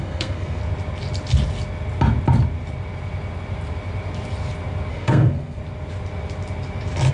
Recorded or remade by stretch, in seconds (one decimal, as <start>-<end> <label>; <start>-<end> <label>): 0.0-0.6 remade; 0.6-4.9 recorded; 4.9-5.6 remade; 5.6-7.1 recorded